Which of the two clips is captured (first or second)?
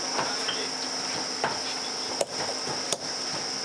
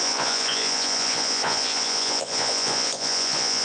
first